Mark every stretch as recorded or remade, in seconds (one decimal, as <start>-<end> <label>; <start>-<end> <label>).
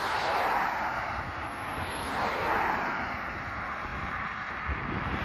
0.0-3.9 recorded; 3.9-4.5 remade; 4.5-5.2 recorded